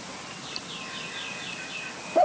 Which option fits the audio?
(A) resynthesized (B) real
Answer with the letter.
B